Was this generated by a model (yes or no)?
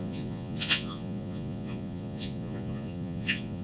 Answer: yes